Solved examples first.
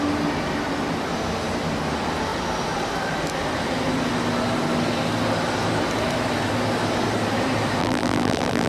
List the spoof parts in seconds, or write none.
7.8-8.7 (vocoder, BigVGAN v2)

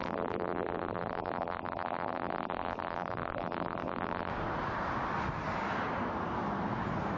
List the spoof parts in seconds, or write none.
0.0-4.3 (vocoder, BigVGAN v2)

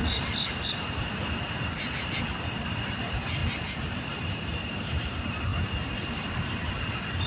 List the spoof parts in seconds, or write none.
0.0-1.0 (vocoder, BigVGAN v2)

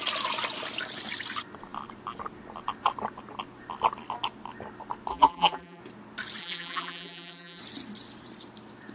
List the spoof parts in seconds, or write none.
5.1-5.8 (vocoder, BigVGAN v2); 6.4-7.6

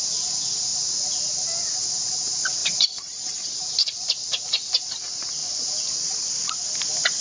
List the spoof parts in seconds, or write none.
2.6-4.8 (vocoder, BigVGAN v2); 5.4-6.3